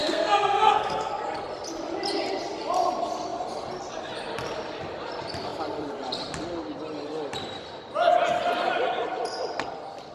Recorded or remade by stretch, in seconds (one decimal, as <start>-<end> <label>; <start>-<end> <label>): 0.0-1.1 remade; 1.1-10.1 recorded